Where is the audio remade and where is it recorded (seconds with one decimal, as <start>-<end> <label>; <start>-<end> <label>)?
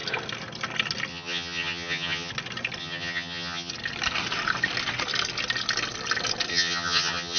0.0-1.1 recorded; 1.1-2.3 remade; 2.3-2.8 recorded; 2.8-3.7 remade; 3.7-6.5 recorded; 6.5-7.4 remade